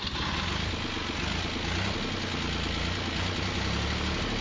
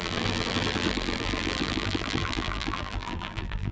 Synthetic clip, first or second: second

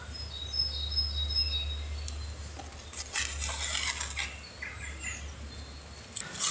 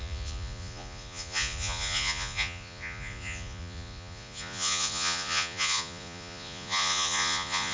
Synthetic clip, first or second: second